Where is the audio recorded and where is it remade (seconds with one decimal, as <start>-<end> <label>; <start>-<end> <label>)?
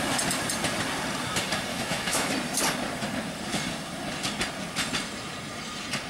0.0-1.7 recorded; 1.7-2.3 remade; 2.3-6.1 recorded